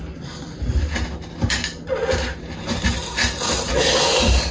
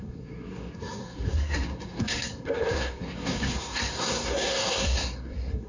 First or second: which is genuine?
first